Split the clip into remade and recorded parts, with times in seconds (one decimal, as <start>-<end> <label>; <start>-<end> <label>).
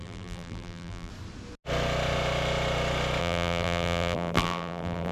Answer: 0.0-1.1 remade; 1.1-3.2 recorded; 3.2-5.1 remade